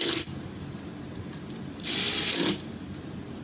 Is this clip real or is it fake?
real